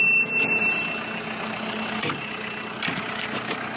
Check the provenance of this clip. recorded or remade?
recorded